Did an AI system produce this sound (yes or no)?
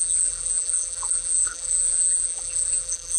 yes